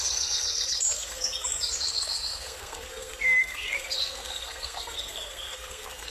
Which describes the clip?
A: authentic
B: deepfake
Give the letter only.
B